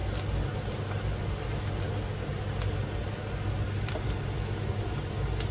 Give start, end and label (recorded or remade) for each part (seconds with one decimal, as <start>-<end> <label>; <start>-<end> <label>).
0.0-5.5 recorded